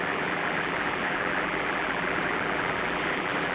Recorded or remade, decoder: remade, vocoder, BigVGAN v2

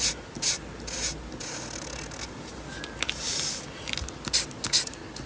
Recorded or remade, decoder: recorded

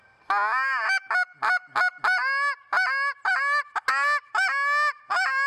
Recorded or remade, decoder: recorded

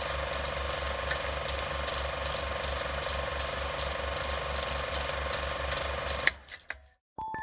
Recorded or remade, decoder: recorded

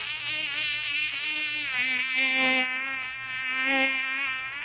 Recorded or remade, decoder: remade, codec, SNAC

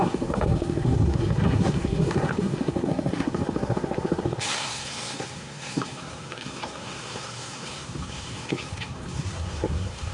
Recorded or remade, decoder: remade, codec, SNAC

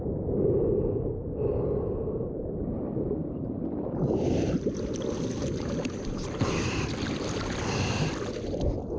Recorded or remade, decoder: remade, vocoder, BigVGAN v2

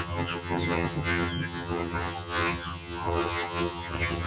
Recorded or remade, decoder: remade, vocoder, HiFi-GAN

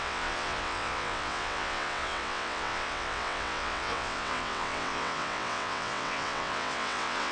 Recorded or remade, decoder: remade, vocoder, WaveNeXt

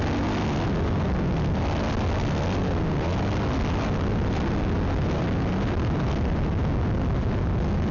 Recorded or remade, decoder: recorded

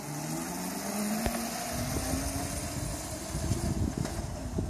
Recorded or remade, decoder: recorded